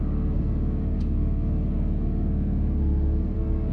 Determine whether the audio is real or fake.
fake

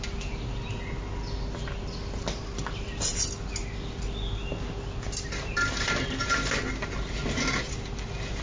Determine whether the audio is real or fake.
real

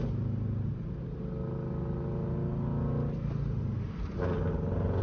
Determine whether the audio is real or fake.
real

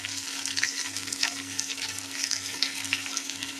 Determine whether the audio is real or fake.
fake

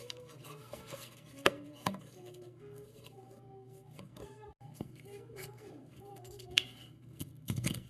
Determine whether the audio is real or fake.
fake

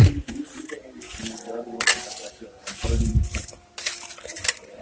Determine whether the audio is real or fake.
real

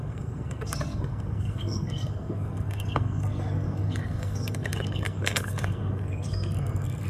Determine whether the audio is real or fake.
fake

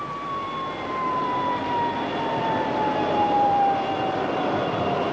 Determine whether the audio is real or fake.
real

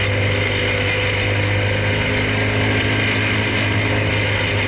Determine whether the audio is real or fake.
real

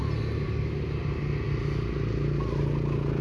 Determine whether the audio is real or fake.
real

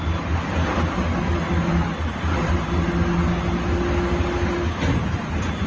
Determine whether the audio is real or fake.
real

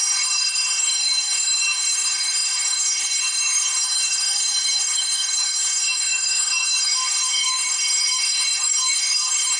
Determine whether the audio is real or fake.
fake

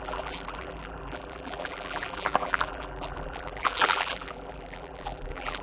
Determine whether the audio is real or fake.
fake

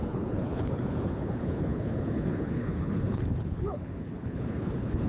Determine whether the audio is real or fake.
fake